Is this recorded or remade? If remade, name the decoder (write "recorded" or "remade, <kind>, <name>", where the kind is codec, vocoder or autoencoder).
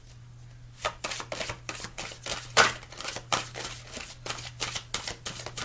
recorded